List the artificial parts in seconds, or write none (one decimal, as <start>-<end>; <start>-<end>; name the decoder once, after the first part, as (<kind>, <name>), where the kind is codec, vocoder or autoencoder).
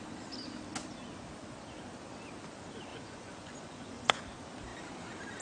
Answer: 2.9-4.2 (vocoder, Vocos)